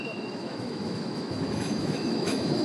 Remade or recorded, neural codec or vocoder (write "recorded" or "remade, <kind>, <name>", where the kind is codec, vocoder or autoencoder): remade, autoencoder, DAC-VAE